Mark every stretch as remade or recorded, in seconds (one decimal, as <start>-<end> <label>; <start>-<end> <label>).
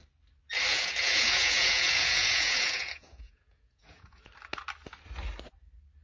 0.0-0.7 recorded; 0.7-4.3 remade; 4.3-6.0 recorded